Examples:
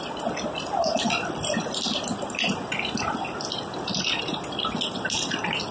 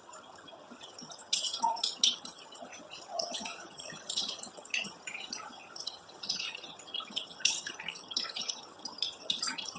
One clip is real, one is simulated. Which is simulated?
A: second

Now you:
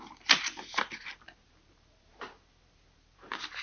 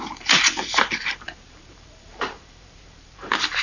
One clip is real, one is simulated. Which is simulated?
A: second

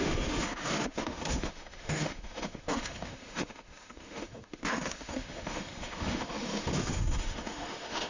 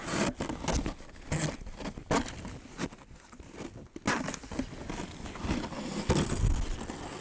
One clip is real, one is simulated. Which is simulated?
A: first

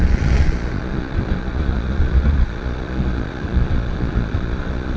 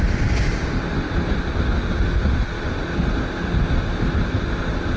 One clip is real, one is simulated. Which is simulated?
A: first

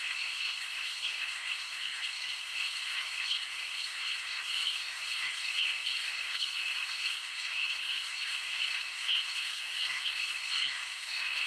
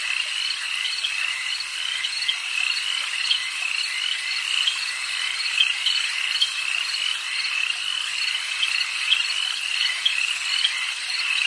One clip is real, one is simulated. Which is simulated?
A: first